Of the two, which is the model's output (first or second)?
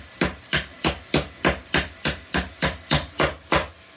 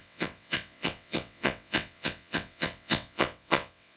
second